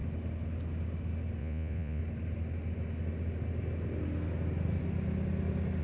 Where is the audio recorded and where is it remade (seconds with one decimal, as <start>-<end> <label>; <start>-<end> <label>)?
0.0-1.4 recorded; 1.4-2.0 remade; 2.0-5.8 recorded